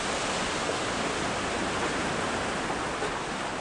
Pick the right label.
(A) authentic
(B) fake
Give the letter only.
A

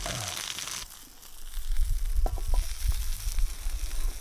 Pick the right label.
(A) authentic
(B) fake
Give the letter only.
A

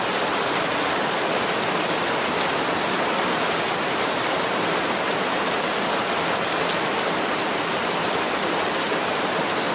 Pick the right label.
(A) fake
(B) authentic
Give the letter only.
B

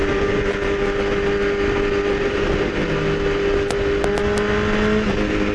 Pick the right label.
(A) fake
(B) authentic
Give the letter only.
B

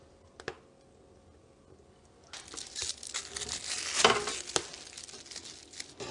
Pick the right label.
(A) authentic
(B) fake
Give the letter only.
A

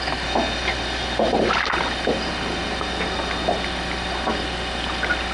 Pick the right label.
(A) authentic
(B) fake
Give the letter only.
A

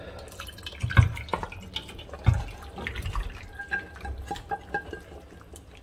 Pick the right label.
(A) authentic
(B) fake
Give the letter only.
A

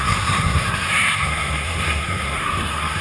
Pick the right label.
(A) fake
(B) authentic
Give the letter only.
A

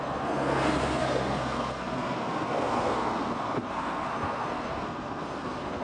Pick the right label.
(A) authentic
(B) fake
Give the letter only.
B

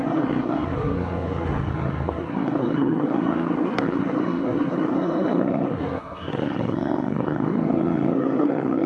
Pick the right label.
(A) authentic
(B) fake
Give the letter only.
B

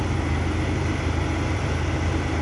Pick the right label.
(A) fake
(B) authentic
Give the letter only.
B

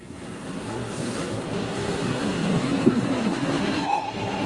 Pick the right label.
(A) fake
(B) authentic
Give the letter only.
A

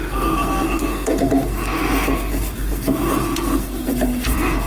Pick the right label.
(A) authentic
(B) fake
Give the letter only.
B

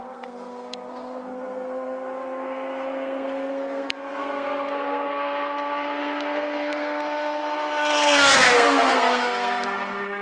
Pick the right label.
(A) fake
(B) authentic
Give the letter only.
A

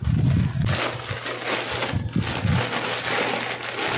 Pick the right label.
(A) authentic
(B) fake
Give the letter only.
A